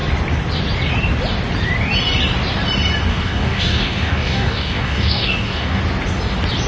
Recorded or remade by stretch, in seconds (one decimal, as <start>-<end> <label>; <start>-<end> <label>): 0.0-3.1 recorded; 3.1-5.8 remade; 5.8-6.7 recorded